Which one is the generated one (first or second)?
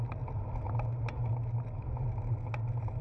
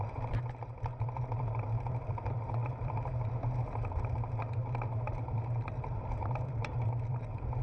second